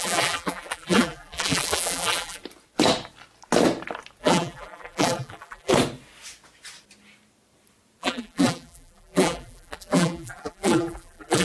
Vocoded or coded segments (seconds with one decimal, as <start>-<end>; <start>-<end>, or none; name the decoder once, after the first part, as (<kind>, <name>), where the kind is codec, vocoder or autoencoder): 0.0-2.4 (vocoder, BigVGAN v2); 4.2-5.7; 8.0-11.4